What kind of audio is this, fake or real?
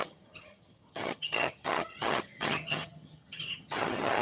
fake